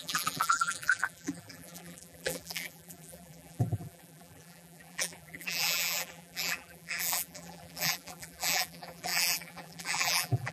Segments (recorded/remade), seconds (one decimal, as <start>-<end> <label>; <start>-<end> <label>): 0.0-10.5 remade